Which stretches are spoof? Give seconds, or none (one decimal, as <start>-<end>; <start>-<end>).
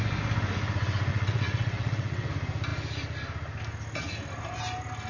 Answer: 1.1-2.3